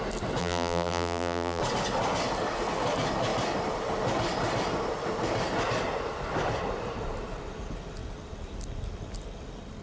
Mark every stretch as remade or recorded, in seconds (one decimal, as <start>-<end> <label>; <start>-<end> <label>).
0.0-0.4 recorded; 0.4-1.6 remade; 1.6-9.8 recorded